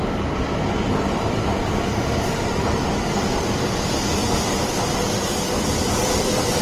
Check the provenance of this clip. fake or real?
real